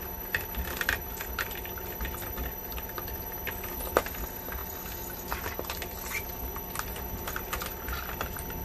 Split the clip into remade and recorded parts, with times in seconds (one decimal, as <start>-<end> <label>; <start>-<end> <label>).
0.0-8.6 recorded